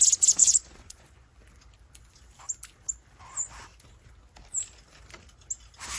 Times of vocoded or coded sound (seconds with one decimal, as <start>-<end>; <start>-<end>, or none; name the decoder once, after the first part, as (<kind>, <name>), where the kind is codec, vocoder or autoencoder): 0.4-1.3 (vocoder, Vocos)